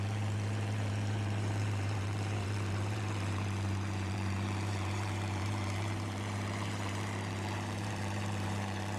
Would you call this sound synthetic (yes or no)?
yes